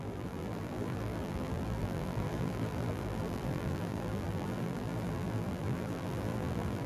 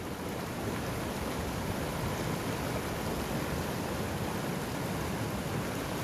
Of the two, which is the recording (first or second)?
second